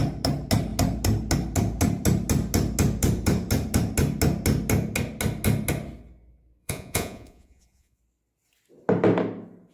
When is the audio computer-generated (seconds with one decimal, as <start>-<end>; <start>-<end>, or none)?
6.6-8.0